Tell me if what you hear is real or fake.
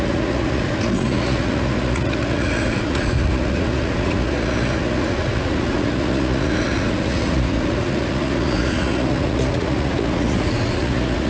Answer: fake